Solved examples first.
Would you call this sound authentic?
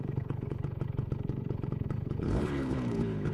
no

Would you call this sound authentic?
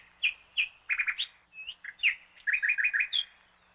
yes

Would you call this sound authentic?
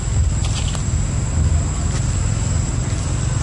yes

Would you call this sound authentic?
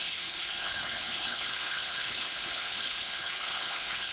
no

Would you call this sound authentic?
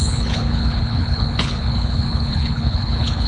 no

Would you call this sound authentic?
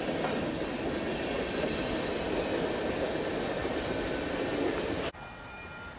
yes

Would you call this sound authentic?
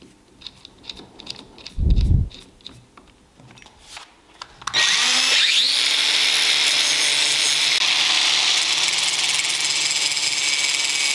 yes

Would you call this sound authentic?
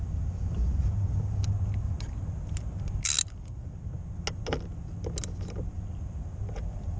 yes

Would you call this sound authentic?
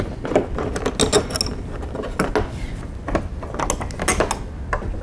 yes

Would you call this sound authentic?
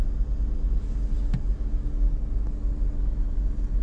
yes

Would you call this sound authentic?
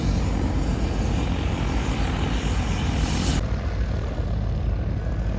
yes